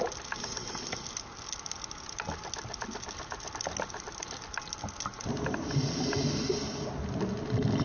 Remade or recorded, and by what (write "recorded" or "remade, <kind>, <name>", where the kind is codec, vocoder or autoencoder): recorded